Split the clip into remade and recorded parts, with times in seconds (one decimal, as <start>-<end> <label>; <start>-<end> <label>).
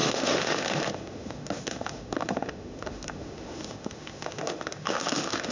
0.0-5.5 remade